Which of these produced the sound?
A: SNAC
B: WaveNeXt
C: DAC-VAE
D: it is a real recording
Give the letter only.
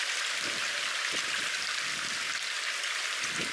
D